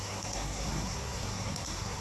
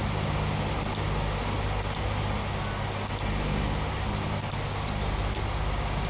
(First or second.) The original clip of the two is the second